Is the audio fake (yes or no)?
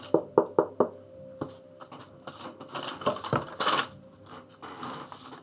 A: no